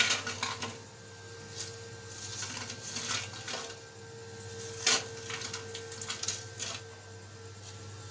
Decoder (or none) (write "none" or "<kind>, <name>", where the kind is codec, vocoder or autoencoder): none